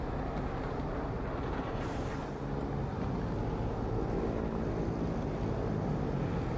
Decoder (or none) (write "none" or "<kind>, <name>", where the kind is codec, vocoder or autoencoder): none